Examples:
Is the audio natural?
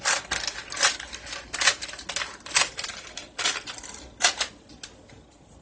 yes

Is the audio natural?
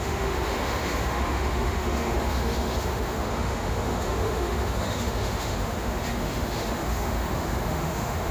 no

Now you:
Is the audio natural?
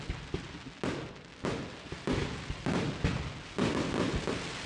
yes